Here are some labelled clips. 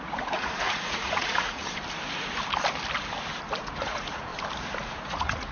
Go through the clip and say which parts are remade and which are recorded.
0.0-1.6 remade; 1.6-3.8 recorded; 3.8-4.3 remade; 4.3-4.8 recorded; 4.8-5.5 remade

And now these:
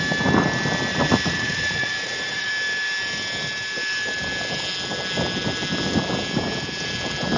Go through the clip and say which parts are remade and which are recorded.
0.0-0.9 recorded; 0.9-2.5 remade; 2.5-7.4 recorded

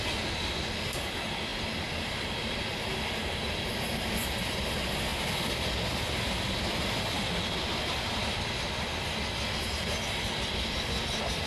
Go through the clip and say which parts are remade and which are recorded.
0.0-1.5 recorded; 1.5-4.4 remade; 4.4-5.1 recorded; 5.1-8.2 remade; 8.2-11.5 recorded